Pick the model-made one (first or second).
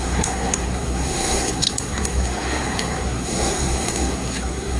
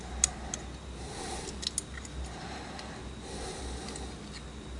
first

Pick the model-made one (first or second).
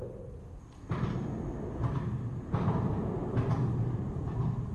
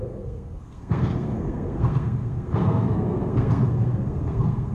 second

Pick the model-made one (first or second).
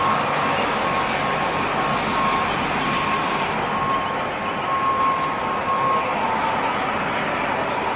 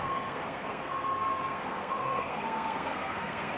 second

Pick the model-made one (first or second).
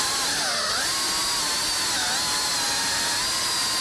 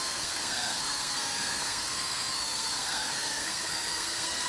second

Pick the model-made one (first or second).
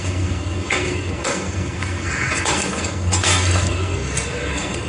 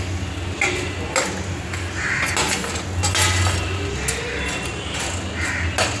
first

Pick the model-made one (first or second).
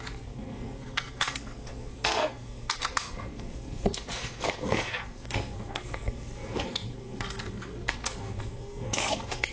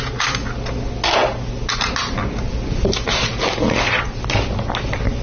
first